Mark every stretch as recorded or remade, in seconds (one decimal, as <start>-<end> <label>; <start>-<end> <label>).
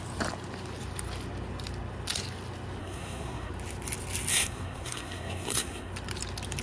0.0-2.8 recorded; 2.8-3.5 remade; 3.5-4.3 recorded; 4.3-5.9 remade; 5.9-6.6 recorded